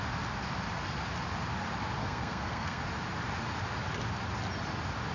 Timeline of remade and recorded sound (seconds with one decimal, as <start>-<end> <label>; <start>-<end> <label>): 0.0-2.0 recorded; 2.0-2.8 remade; 2.8-5.1 recorded